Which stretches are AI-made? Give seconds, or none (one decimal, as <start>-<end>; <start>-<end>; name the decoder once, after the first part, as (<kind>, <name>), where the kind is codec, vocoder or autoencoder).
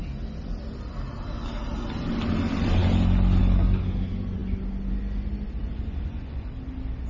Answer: 5.6-6.5 (vocoder, Vocos)